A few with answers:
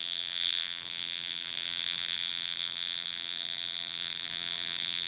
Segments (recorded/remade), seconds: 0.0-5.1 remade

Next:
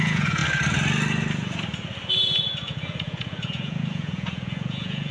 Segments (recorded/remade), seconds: 0.0-0.4 remade; 0.4-2.1 recorded; 2.1-5.1 remade

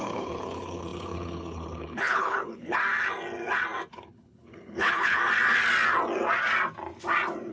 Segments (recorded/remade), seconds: 0.0-2.8 remade; 2.8-3.9 recorded; 3.9-5.2 remade; 5.2-7.5 recorded

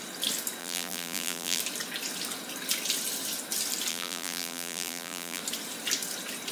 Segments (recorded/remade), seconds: 0.0-0.6 recorded; 0.6-1.6 remade; 1.6-3.9 recorded; 3.9-5.4 remade; 5.4-6.5 recorded

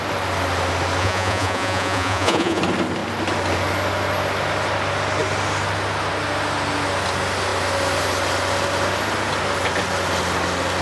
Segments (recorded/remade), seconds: 0.0-1.0 recorded; 1.0-2.6 remade; 2.6-10.8 recorded

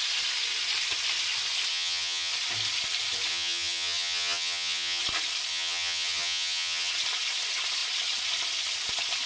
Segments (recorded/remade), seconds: 0.0-1.7 recorded; 1.7-2.3 remade; 2.3-3.3 recorded; 3.3-5.0 remade; 5.0-5.5 recorded; 5.5-6.9 remade; 6.9-9.3 recorded